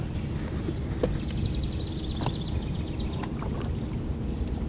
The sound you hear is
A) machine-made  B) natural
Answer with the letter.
B